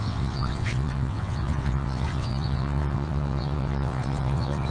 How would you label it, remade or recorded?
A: remade